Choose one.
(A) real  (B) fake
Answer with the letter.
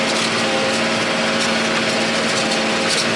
A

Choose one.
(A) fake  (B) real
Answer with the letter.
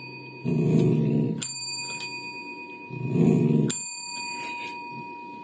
B